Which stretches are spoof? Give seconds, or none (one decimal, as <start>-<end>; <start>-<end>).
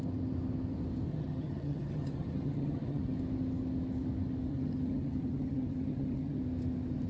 1.1-3.2; 4.5-6.4